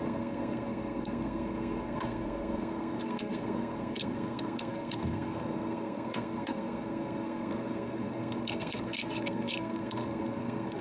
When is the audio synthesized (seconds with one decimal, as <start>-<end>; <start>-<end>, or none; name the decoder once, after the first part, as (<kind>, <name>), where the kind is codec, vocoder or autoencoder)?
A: 0.0-10.8 (codec, SNAC)